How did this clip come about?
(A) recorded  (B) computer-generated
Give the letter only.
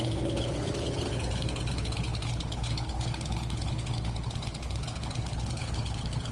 B